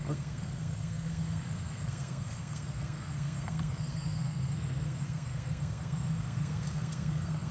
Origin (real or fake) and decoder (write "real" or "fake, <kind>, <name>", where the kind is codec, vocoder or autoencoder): fake, codec, SNAC